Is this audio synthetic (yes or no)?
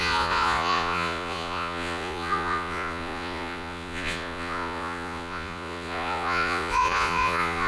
yes